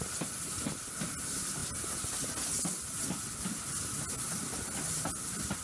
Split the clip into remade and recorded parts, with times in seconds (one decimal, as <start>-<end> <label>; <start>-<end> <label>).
0.0-5.6 recorded